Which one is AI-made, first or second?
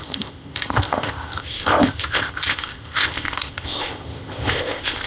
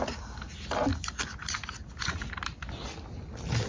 first